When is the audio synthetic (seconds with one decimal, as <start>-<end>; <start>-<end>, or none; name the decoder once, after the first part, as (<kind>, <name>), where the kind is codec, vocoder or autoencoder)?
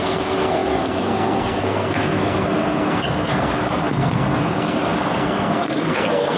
0.0-6.4 (codec, SNAC)